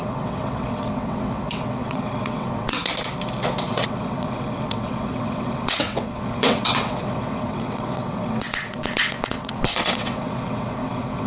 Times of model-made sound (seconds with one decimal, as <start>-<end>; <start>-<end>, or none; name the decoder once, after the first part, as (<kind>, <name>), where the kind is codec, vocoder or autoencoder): 0.0-2.8 (vocoder, WaveNeXt); 3.7-11.3